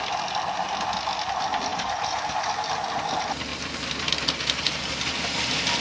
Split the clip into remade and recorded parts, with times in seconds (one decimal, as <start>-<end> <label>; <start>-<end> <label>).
0.0-1.7 recorded; 1.7-2.2 remade; 2.2-3.5 recorded; 3.5-5.8 remade